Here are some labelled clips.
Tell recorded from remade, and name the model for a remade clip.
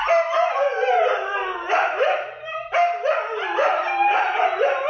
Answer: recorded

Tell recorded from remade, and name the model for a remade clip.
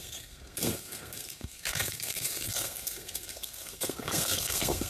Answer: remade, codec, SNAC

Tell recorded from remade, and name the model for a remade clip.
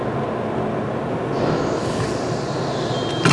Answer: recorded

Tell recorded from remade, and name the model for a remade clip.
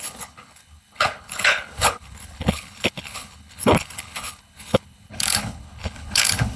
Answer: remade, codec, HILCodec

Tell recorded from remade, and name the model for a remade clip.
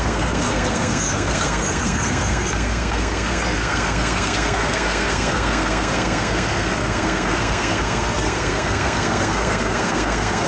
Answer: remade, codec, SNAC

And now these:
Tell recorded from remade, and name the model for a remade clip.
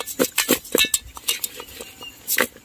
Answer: recorded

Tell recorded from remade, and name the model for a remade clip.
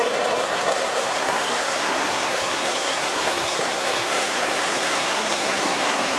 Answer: remade, codec, SNAC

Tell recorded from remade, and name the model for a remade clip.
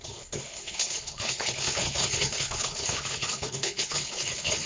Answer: remade, codec, HILCodec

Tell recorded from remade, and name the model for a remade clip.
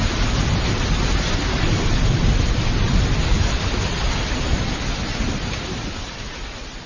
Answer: recorded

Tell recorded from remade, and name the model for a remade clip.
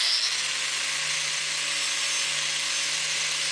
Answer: recorded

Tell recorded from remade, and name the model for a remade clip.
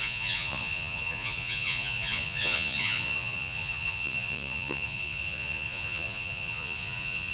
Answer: remade, vocoder, Vocos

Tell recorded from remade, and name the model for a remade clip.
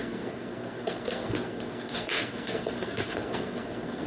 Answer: remade, codec, SNAC